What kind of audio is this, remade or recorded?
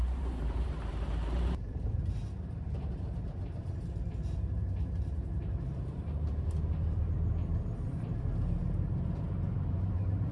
remade